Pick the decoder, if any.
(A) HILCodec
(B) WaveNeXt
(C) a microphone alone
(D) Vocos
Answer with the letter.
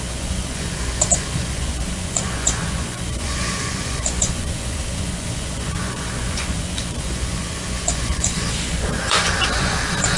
D